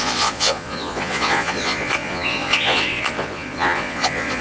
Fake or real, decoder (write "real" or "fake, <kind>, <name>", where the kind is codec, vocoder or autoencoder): fake, vocoder, Vocos